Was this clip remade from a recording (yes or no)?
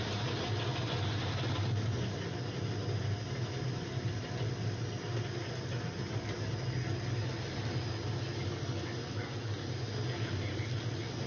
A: no